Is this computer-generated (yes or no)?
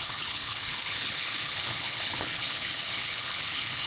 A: yes